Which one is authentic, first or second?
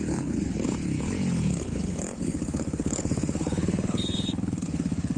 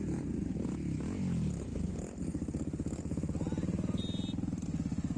second